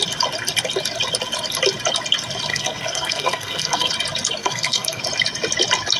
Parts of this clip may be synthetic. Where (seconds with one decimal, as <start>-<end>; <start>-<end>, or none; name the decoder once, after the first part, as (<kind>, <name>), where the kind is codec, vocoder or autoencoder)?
2.5-3.9 (codec, SNAC); 4.4-5.0